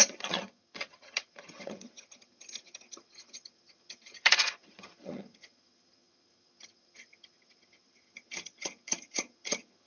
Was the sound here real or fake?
fake